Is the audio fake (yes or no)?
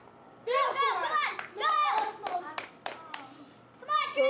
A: yes